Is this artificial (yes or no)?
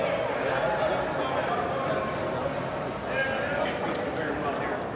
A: no